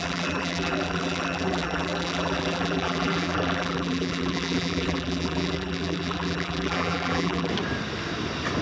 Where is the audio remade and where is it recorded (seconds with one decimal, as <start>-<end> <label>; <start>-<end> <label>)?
0.0-7.5 remade; 7.5-8.6 recorded